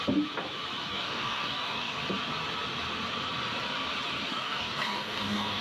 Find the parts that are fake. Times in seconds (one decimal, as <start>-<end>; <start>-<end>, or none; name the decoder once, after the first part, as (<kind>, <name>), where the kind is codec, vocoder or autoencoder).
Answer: 0.9-2.0 (codec, DAC); 4.3-5.6